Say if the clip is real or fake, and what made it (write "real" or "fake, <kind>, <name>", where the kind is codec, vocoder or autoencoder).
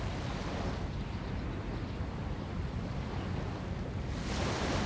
real